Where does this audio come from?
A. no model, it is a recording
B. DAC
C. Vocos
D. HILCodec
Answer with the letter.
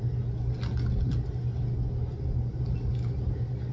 A